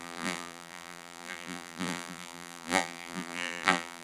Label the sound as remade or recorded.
remade